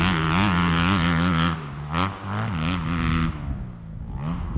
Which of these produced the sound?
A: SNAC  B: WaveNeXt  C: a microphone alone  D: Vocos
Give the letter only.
C